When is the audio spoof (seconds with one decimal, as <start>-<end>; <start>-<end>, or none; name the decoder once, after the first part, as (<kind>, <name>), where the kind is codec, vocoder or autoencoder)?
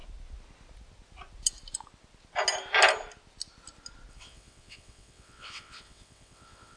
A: 4.1-6.8 (vocoder, WaveNeXt)